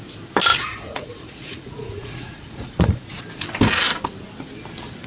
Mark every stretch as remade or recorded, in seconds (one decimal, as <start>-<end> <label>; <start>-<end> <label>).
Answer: 0.0-0.5 recorded; 0.5-3.2 remade; 3.2-5.1 recorded